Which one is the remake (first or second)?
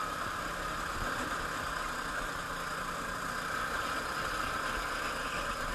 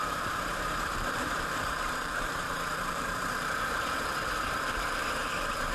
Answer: second